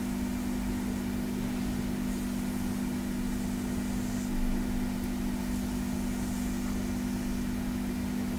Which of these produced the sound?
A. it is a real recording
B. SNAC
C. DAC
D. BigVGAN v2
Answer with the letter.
A